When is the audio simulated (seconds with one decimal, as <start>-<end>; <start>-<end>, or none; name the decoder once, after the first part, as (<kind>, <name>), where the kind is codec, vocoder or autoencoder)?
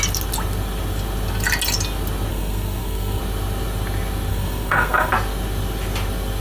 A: 2.3-3.2 (codec, SNAC); 4.3-5.1